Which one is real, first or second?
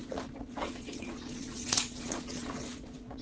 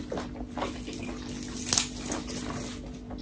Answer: second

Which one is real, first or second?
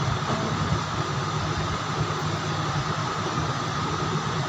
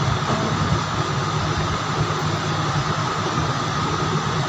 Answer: second